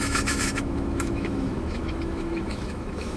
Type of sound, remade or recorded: remade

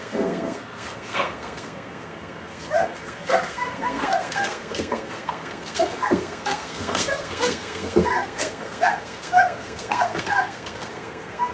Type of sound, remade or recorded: remade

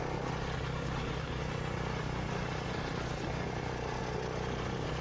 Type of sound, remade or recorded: recorded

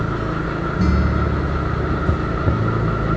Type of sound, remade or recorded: recorded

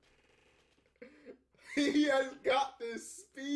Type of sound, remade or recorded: recorded